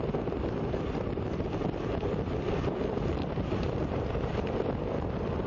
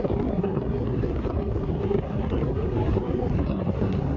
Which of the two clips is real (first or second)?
first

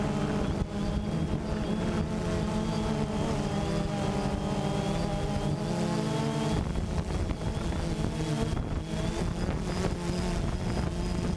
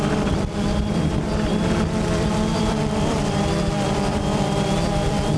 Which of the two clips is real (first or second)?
first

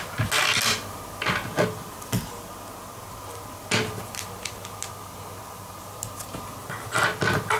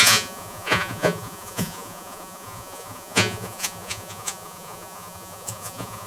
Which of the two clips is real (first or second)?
first